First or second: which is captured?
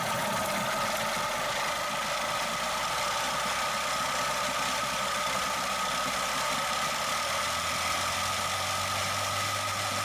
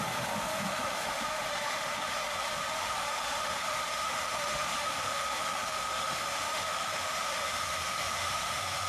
first